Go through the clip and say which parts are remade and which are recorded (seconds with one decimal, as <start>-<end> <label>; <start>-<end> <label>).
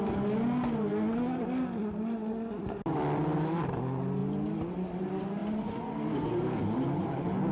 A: 0.0-7.5 recorded